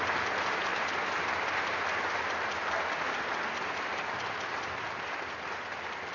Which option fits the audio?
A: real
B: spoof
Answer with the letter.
A